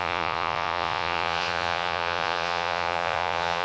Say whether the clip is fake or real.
fake